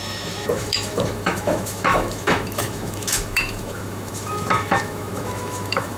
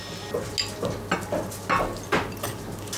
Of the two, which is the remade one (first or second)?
first